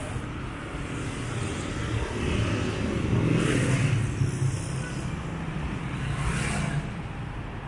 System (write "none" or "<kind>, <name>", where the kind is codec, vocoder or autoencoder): none